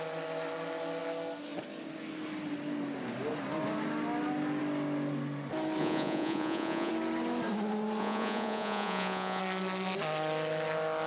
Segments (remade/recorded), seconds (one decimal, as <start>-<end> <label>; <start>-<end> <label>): 0.0-5.8 recorded; 5.8-6.9 remade; 6.9-8.0 recorded; 8.0-9.4 remade; 9.4-11.1 recorded

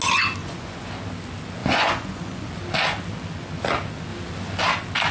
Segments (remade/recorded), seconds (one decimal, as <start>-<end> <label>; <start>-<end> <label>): 0.0-0.4 recorded; 0.4-0.9 remade; 0.9-1.6 recorded; 1.6-2.5 remade; 2.5-5.1 recorded

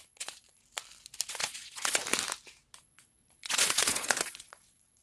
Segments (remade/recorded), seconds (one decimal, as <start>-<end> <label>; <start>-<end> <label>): 0.0-0.6 remade; 0.6-1.3 recorded; 1.3-2.0 remade; 2.0-2.8 recorded; 2.8-5.0 remade

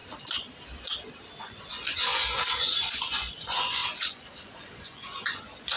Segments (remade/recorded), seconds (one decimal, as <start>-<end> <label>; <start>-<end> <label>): 0.0-1.4 recorded; 1.4-5.8 remade

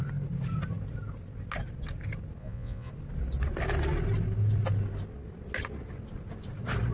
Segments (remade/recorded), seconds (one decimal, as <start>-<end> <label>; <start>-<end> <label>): 0.0-2.4 recorded; 2.4-2.9 remade; 2.9-6.9 recorded

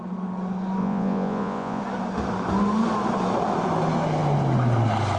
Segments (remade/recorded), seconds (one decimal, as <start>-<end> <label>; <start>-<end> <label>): 0.0-0.8 recorded; 0.8-1.8 remade; 1.8-5.2 recorded

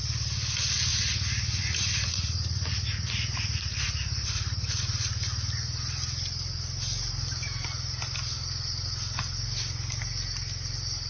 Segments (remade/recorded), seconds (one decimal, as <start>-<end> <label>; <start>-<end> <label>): 0.0-0.9 recorded; 0.9-4.8 remade; 4.8-11.1 recorded